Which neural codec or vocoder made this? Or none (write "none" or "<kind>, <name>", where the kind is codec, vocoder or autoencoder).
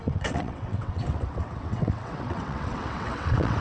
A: vocoder, WaveNeXt